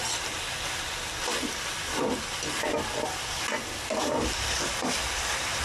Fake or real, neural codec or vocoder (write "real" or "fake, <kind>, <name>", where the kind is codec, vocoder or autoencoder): real